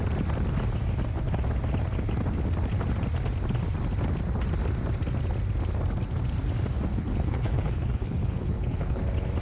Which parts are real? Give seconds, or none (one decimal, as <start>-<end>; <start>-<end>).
0.0-6.9; 9.0-9.4